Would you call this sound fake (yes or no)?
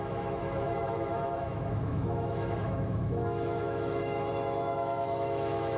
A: yes